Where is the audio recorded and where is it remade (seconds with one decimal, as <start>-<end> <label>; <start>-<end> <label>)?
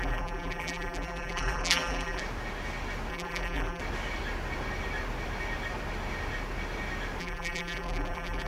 0.0-2.2 remade; 2.2-3.1 recorded; 3.1-3.8 remade; 3.8-7.2 recorded; 7.2-8.5 remade